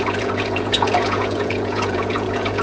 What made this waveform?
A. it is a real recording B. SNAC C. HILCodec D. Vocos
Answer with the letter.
D